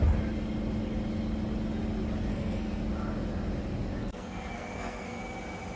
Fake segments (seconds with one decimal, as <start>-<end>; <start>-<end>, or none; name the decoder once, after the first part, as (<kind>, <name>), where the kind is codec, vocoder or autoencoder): 2.3-2.8 (codec, SNAC); 4.0-5.2